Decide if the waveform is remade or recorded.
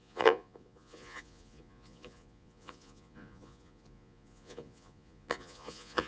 remade